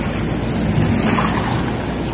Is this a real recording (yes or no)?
yes